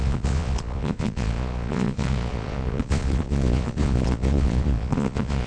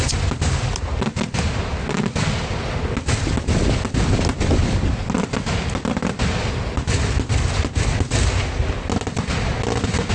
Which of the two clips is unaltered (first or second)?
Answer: second